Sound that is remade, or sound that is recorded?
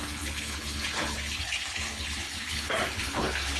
remade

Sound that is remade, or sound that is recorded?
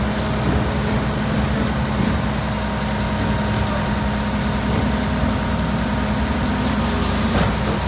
recorded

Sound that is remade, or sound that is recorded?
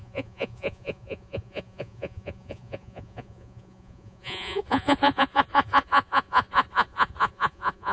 remade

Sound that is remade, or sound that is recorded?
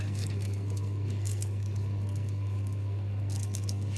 remade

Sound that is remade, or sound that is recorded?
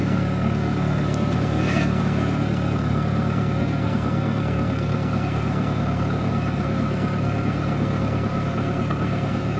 remade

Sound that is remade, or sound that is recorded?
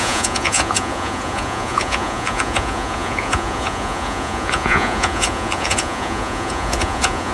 remade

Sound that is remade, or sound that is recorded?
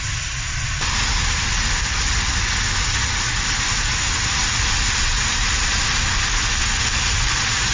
recorded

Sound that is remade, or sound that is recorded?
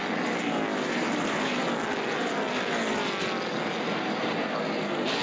recorded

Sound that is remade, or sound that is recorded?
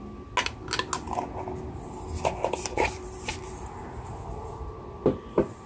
recorded